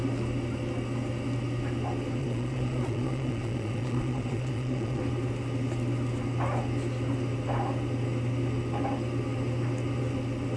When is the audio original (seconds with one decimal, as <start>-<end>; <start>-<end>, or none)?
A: 0.0-2.2; 5.0-10.6